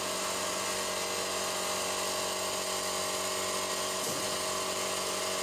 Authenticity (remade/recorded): recorded